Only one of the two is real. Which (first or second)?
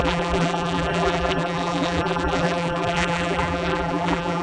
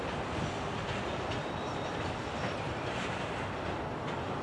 second